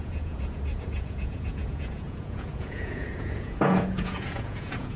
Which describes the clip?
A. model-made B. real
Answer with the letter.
A